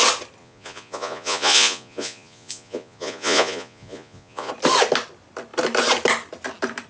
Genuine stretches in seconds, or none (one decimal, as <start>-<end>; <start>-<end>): 0.0-0.4; 4.5-6.9